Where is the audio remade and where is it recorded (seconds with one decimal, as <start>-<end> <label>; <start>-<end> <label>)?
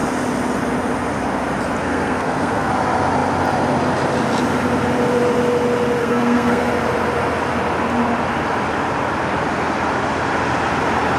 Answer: 0.0-1.8 recorded; 1.8-2.7 remade; 2.7-6.0 recorded; 6.0-6.7 remade; 6.7-11.2 recorded